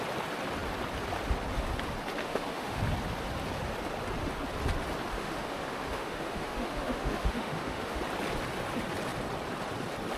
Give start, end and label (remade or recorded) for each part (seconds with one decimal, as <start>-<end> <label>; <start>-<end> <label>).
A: 0.0-2.2 recorded; 2.2-2.8 remade; 2.8-5.1 recorded; 5.1-8.0 remade; 8.0-10.2 recorded